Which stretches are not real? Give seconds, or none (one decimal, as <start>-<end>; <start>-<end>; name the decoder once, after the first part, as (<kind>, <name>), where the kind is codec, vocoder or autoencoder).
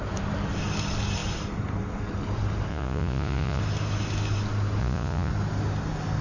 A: 2.7-3.6 (vocoder, Vocos); 4.8-5.3